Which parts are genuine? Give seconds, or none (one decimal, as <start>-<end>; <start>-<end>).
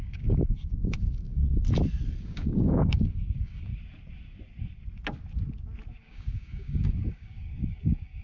1.4-2.2; 3.7-6.0